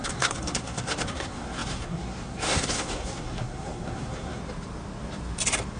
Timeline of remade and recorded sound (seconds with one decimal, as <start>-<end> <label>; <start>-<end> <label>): 0.0-4.4 remade; 4.4-5.8 recorded